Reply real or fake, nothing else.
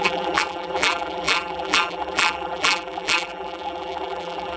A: fake